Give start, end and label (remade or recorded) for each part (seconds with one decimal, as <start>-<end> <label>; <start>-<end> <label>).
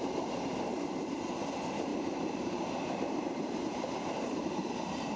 0.0-0.5 recorded; 0.5-1.2 remade; 1.2-1.9 recorded; 1.9-5.2 remade